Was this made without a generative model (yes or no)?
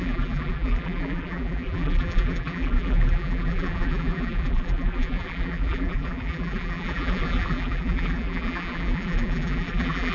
no